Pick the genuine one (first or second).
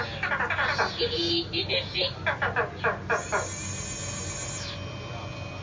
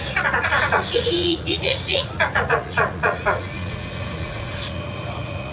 first